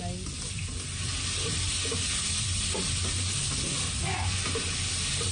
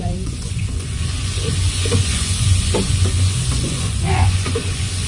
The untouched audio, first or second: first